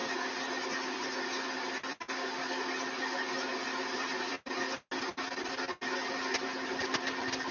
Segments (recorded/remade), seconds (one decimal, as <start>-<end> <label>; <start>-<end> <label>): 0.0-3.5 recorded; 3.5-4.5 remade; 4.5-7.5 recorded